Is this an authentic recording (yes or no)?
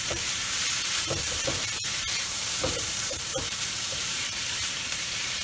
no